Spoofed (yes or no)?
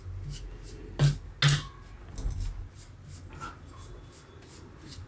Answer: no